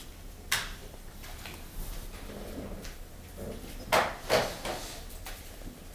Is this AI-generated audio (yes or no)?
no